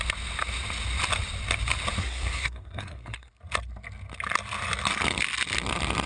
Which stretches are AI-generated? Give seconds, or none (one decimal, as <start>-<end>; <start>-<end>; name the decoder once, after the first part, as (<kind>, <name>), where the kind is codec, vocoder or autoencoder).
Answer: 2.0-3.3 (codec, SNAC)